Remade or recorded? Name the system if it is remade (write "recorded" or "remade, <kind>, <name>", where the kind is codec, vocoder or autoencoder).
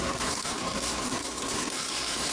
remade, codec, SNAC